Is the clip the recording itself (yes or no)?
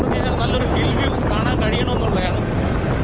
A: yes